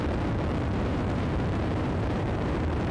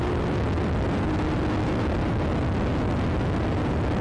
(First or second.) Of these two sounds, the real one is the second